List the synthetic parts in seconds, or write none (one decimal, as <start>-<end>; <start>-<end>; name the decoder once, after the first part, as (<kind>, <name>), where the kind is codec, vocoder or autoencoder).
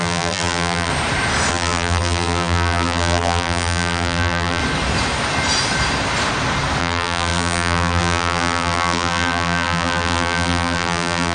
0.0-0.9 (vocoder, BigVGAN v2); 1.5-4.6; 6.8-11.3